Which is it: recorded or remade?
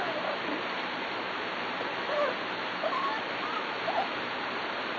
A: remade